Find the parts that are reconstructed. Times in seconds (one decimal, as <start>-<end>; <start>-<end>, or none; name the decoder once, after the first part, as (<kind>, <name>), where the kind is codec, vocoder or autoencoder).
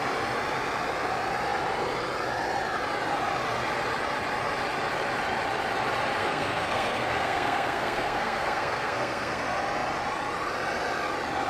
6.2-9.4 (codec, SNAC)